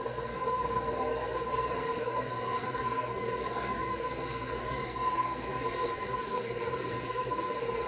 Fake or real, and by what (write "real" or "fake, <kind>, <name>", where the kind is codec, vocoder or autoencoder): fake, codec, SNAC